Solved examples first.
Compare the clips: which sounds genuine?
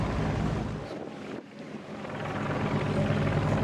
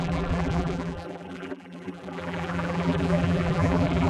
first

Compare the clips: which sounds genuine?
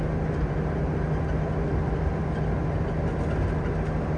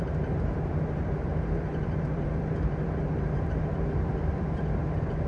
first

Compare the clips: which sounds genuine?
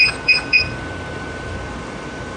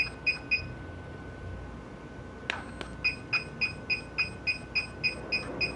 second